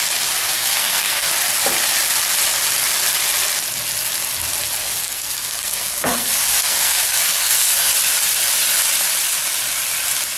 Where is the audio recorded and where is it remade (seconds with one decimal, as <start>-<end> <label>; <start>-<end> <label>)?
0.0-0.4 recorded; 0.4-1.3 remade; 1.3-4.8 recorded; 4.8-7.9 remade; 7.9-10.4 recorded

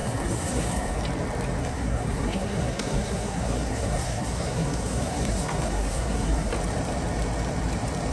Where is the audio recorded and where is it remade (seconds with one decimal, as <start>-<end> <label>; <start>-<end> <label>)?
0.0-1.0 remade; 1.0-1.6 recorded; 1.6-6.5 remade; 6.5-8.1 recorded

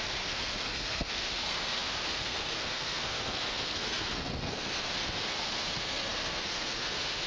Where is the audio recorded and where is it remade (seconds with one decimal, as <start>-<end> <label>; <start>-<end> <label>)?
0.0-7.3 remade

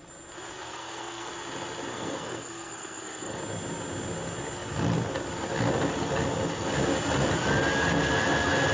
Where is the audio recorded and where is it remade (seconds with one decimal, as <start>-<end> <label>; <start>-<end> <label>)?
0.0-0.7 recorded; 0.7-1.3 remade; 1.3-1.9 recorded; 1.9-3.4 remade; 3.4-8.7 recorded